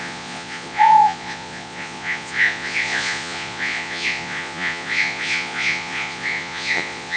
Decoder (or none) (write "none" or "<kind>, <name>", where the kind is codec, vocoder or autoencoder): vocoder, Vocos